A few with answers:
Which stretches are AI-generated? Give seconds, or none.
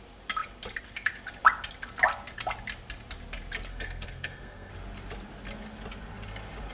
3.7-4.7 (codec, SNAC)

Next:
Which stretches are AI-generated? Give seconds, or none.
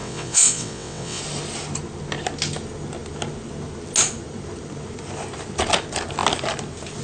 0.0-1.2 (vocoder, WaveNeXt)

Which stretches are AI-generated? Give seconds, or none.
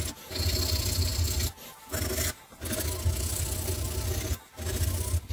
none